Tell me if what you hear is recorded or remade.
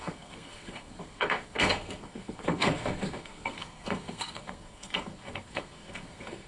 remade